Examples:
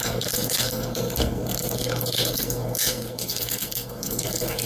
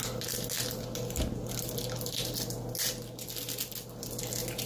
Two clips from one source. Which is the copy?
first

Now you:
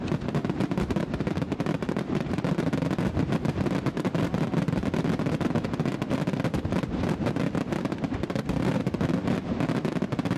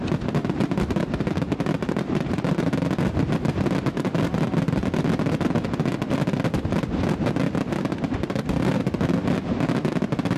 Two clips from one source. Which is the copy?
first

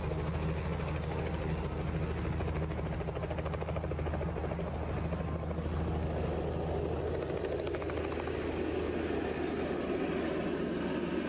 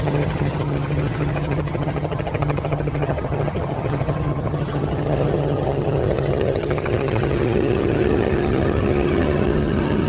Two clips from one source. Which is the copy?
second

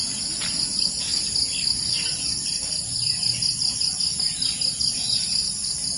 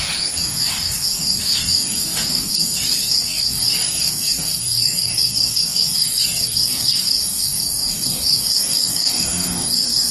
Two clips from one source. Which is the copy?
second